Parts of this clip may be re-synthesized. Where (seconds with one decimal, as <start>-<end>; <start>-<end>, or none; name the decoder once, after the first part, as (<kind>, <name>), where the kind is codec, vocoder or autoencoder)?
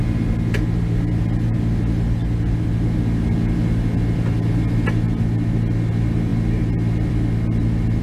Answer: none